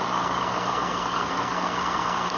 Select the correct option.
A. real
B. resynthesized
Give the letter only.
B